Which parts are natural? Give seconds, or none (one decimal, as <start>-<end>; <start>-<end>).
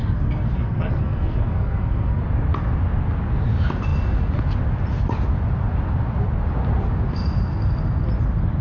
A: 2.2-8.6